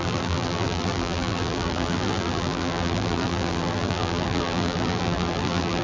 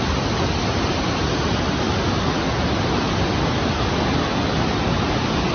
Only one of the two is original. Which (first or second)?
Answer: second